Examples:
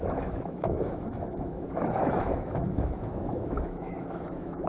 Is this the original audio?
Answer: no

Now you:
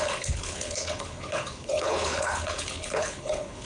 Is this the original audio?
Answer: no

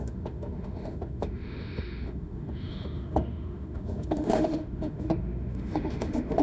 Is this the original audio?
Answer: no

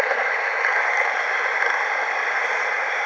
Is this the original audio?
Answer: yes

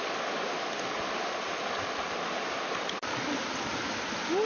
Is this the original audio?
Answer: yes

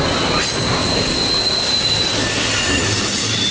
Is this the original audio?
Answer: yes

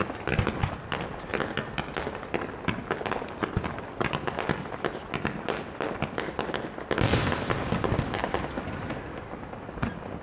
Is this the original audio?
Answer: yes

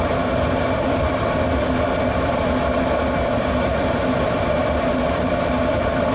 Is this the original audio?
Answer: no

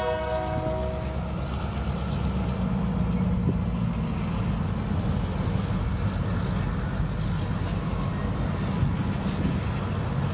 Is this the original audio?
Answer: yes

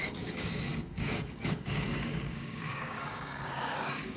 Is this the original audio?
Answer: no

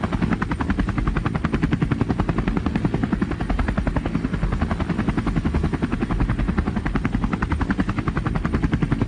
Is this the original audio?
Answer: yes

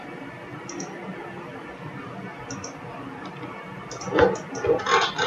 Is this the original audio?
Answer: yes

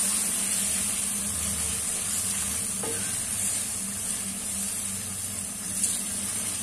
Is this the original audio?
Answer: yes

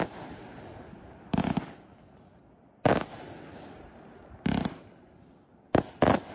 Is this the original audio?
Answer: yes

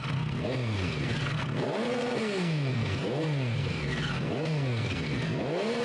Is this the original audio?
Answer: no